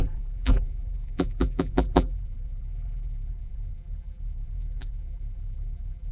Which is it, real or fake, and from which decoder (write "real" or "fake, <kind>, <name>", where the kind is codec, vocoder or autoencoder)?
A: fake, vocoder, BigVGAN v2